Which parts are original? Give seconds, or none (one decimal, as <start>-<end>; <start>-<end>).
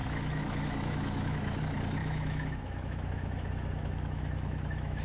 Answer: 1.6-2.0